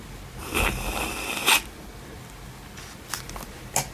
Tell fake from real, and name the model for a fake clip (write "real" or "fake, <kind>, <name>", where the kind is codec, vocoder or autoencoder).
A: real